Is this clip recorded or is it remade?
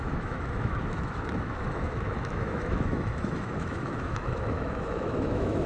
remade